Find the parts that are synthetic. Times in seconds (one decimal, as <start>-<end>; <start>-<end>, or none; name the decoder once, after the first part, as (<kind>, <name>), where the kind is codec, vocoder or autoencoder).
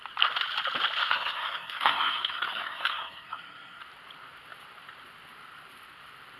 1.0-3.8 (codec, SNAC)